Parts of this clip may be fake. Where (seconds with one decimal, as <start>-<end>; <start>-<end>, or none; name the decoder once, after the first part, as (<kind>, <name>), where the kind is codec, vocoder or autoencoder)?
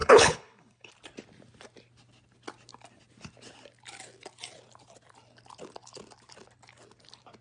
0.0-0.9 (codec, HILCodec)